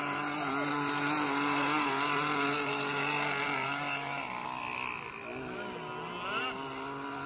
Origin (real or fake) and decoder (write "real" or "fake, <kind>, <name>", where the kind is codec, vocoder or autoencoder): real